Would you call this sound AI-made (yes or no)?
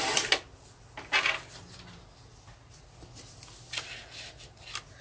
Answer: no